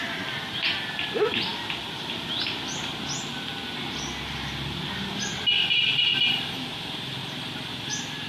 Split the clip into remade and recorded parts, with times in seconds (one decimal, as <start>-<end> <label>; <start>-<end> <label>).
0.0-8.3 recorded